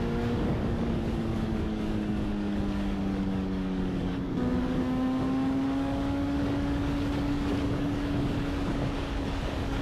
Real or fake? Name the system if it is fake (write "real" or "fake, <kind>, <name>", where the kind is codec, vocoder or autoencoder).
fake, codec, DAC